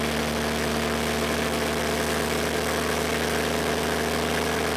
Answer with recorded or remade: recorded